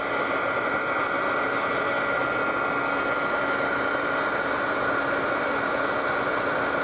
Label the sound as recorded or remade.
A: recorded